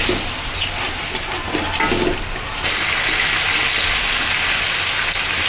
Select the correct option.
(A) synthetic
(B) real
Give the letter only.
B